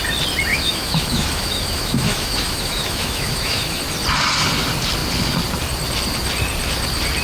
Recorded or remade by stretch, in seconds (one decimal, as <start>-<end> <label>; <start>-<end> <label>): 0.0-0.5 recorded; 0.5-3.8 remade; 3.8-7.2 recorded

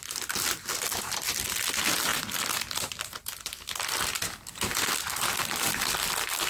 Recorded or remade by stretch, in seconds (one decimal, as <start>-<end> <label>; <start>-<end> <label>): 0.0-0.9 recorded; 0.9-1.5 remade; 1.5-6.5 recorded

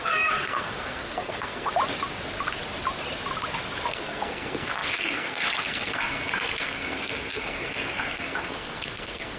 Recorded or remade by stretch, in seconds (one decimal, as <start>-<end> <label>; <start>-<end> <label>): 0.0-1.7 remade; 1.7-3.9 recorded; 3.9-9.4 remade

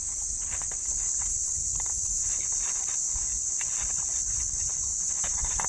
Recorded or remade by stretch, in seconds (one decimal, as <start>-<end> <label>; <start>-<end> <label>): 0.0-5.7 recorded

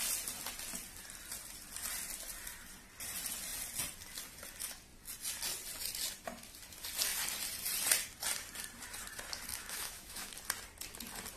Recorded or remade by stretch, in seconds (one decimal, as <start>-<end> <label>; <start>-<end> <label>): 0.0-9.5 recorded; 9.5-10.3 remade; 10.3-11.4 recorded

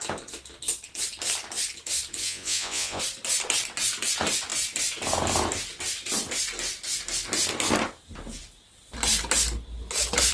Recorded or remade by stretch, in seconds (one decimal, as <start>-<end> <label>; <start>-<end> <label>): 0.0-2.2 recorded; 2.2-3.0 remade; 3.0-10.3 recorded